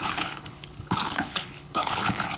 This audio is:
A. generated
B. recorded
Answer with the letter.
A